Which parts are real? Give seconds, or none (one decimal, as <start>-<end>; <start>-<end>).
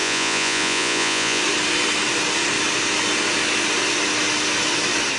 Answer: 1.4-5.2